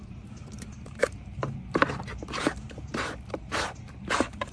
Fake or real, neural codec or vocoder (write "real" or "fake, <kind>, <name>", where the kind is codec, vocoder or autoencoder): fake, vocoder, BigVGAN v2